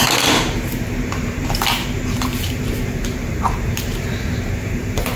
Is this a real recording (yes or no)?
no